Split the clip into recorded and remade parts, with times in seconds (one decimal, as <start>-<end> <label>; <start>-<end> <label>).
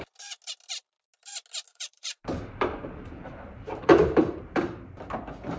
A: 0.0-1.7 recorded; 1.7-4.6 remade; 4.6-5.6 recorded